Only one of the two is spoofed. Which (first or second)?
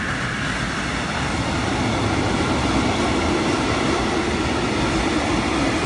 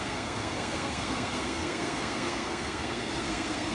second